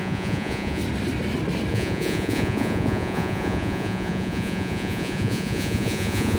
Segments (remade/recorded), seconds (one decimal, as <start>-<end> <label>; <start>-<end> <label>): 0.0-0.8 remade; 0.8-1.7 recorded; 1.7-6.4 remade